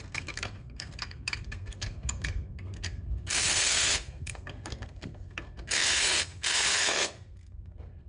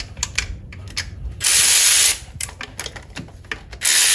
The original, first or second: second